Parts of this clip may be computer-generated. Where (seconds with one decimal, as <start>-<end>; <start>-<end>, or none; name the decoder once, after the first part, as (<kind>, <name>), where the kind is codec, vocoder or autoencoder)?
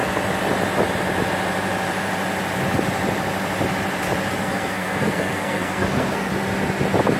4.3-6.3 (codec, SNAC)